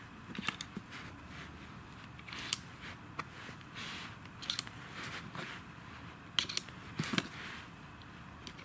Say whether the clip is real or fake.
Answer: real